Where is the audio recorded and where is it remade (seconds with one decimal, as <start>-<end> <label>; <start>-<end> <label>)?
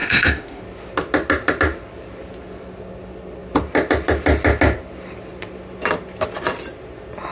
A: 0.0-0.6 remade; 0.6-7.3 recorded